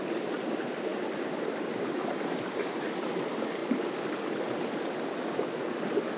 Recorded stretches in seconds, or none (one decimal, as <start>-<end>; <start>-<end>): 0.0-6.2